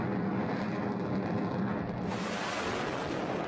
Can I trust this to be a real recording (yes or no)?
yes